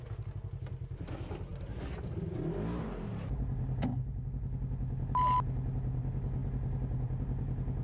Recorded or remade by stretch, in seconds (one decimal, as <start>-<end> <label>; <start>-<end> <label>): 0.0-7.8 recorded